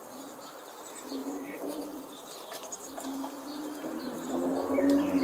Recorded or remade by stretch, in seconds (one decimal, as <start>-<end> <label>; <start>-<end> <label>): 0.0-1.2 recorded; 1.2-4.3 remade; 4.3-5.2 recorded